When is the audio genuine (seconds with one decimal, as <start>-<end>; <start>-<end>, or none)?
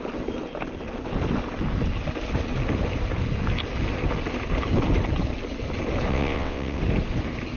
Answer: 0.0-6.1; 6.8-7.6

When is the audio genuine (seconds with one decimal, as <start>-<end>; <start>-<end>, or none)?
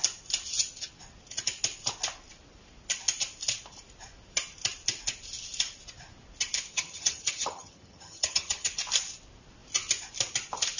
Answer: 0.0-6.7; 8.7-10.8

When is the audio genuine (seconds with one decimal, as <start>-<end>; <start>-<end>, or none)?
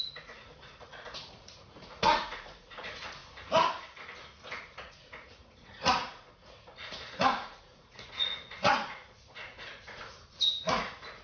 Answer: 3.2-4.4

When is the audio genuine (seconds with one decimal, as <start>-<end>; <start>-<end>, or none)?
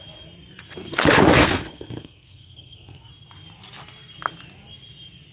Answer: 0.0-1.4; 3.1-5.3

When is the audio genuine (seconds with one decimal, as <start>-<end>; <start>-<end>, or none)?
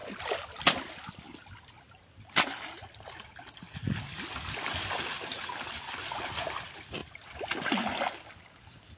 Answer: 0.0-9.0